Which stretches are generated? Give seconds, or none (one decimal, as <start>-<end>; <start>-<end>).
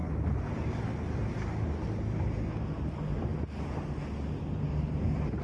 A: none